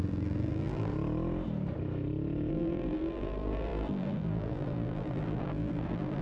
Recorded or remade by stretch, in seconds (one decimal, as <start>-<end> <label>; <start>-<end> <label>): 0.0-0.9 remade; 0.9-2.5 recorded; 2.5-6.2 remade